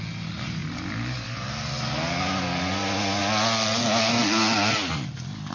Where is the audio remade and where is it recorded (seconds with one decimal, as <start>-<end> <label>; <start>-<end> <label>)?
0.0-5.5 recorded